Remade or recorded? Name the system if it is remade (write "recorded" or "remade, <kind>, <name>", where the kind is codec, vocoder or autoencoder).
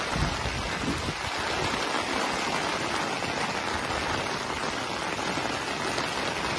recorded